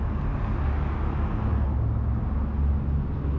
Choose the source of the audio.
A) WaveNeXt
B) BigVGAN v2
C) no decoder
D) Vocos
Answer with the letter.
C